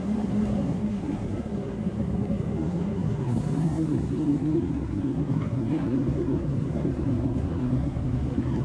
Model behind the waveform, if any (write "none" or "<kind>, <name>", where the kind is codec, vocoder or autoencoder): codec, SNAC